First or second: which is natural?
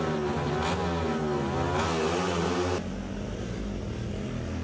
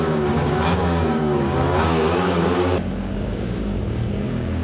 first